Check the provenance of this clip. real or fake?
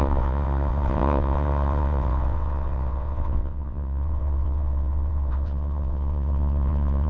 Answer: fake